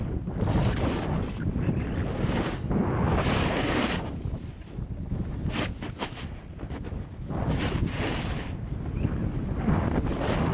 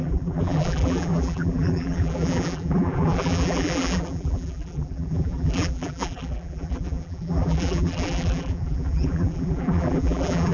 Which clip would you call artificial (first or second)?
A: second